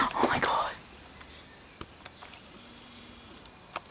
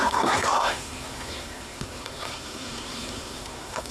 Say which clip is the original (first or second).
first